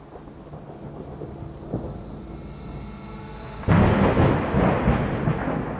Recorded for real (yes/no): yes